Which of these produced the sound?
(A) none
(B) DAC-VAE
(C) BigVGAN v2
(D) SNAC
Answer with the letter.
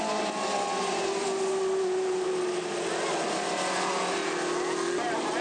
A